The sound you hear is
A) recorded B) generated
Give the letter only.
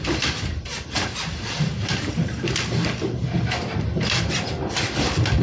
A